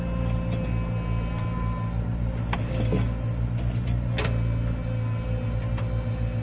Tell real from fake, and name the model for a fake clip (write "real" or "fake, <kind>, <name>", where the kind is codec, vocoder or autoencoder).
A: real